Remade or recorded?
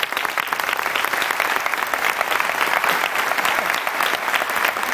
recorded